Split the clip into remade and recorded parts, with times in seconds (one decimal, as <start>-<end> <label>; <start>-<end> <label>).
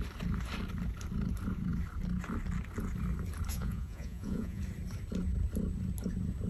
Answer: 0.0-3.5 recorded; 3.5-4.6 remade; 4.6-6.5 recorded